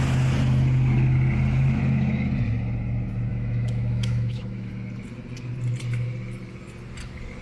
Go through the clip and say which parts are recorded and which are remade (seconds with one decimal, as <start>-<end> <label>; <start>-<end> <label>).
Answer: 0.0-3.3 recorded; 3.3-4.7 remade; 4.7-7.4 recorded